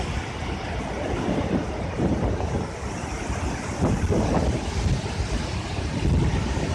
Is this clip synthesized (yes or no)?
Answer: no